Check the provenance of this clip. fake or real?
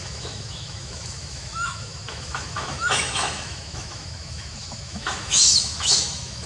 fake